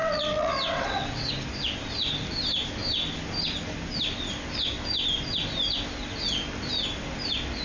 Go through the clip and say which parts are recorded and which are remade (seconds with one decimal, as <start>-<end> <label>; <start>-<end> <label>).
0.0-1.3 remade; 1.3-7.6 recorded